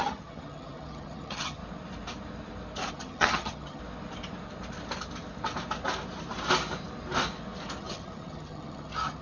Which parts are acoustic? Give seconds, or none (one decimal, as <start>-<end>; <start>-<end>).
1.6-2.9; 3.8-7.8